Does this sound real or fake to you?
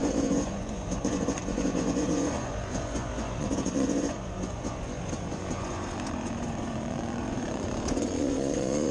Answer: fake